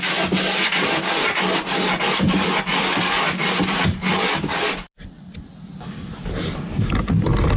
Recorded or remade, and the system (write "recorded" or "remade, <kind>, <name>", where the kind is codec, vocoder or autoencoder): recorded